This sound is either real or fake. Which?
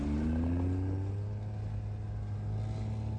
real